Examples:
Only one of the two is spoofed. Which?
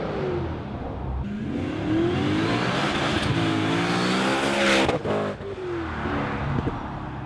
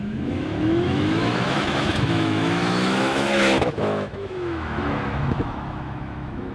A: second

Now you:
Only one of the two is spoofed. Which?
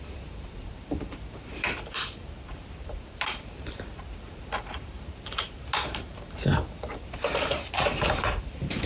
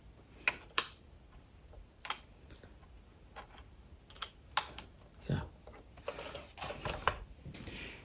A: first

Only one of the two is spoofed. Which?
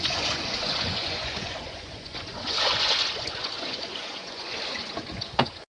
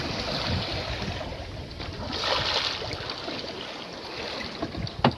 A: first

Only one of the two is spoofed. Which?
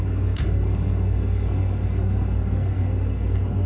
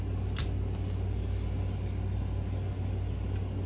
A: first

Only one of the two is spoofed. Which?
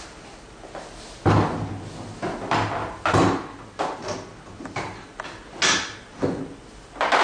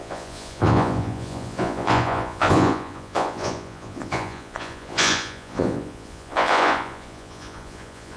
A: second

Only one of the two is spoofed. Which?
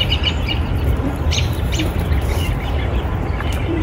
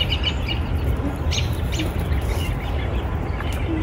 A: first